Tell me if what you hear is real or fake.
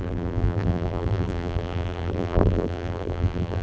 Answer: fake